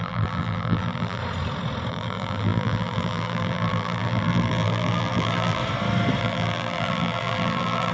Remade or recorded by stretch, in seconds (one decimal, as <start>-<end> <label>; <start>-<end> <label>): 0.0-1.2 remade; 1.2-1.9 recorded; 1.9-5.6 remade; 5.6-6.2 recorded; 6.2-7.9 remade